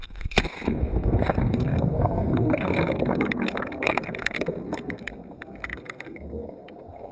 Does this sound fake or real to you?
fake